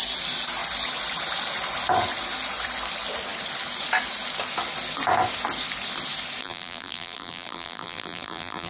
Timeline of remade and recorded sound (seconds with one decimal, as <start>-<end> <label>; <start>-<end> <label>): 0.0-6.4 recorded; 6.4-8.7 remade